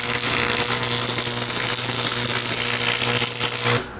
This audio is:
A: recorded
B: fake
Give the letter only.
A